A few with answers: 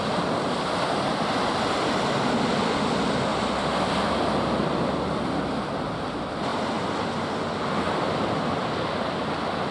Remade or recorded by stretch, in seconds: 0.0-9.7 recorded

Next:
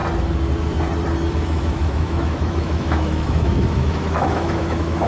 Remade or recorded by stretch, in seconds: 0.0-1.3 recorded; 1.3-5.1 remade

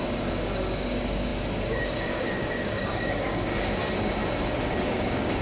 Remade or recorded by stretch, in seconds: 0.0-3.5 remade; 3.5-4.8 recorded; 4.8-5.4 remade

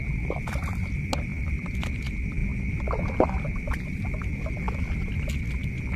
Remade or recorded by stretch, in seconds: 0.0-1.3 recorded; 1.3-1.9 remade; 1.9-6.0 recorded

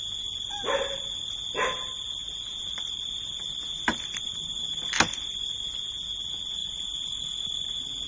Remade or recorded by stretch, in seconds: 0.0-8.1 recorded